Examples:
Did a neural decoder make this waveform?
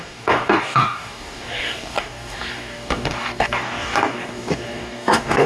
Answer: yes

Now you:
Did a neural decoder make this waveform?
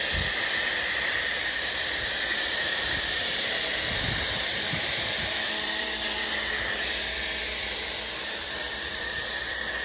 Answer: yes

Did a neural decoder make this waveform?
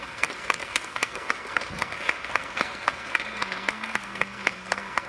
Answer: yes